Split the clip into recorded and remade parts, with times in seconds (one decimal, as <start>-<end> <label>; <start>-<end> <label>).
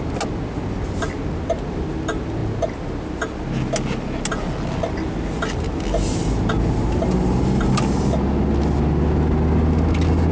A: 0.0-10.3 recorded